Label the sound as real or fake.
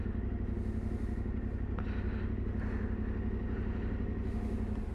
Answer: real